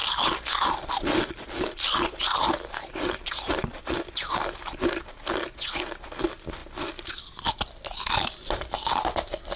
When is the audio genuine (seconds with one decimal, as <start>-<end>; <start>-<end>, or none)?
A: 0.0-9.6